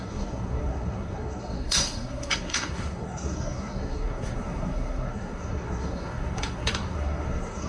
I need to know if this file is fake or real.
fake